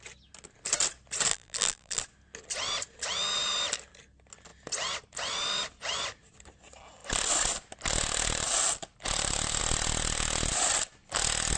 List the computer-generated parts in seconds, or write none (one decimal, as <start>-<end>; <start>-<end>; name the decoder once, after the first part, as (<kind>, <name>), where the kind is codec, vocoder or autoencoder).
1.3-2.0 (vocoder, BigVGAN v2)